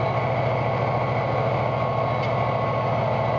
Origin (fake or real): real